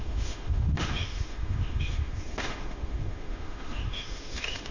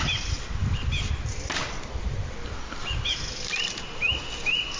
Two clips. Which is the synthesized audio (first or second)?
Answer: first